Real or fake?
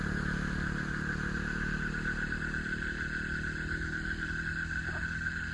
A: real